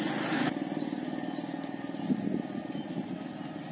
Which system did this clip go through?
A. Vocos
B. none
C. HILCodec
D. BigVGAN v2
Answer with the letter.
B